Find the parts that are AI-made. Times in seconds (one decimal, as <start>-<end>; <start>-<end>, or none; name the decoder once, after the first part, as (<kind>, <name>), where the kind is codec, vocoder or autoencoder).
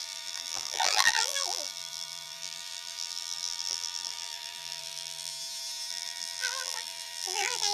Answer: 0.0-5.3 (vocoder, BigVGAN v2); 5.9-7.7